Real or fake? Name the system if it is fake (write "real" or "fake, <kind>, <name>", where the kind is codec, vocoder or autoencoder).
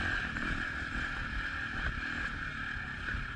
real